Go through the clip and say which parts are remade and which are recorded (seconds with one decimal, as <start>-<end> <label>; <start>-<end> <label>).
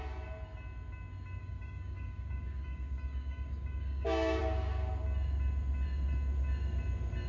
0.0-1.4 recorded; 1.4-4.4 remade; 4.4-7.3 recorded